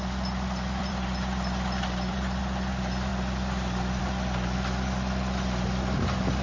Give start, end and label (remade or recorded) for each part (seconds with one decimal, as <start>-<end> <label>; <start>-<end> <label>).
0.0-2.4 remade; 2.4-6.4 recorded